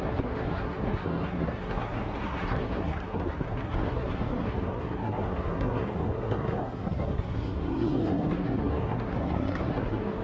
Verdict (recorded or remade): remade